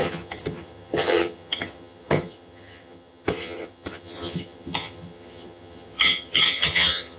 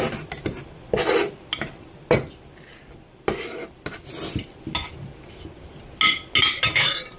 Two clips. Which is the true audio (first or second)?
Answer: second